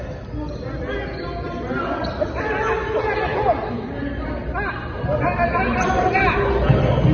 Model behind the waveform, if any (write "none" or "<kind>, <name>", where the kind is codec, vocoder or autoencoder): none